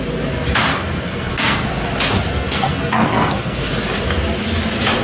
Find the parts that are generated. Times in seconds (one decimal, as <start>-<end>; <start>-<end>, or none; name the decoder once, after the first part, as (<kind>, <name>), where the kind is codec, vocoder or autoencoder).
0.7-1.7 (codec, SNAC); 2.3-3.7